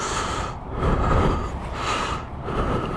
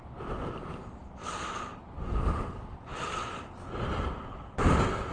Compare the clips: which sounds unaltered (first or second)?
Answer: second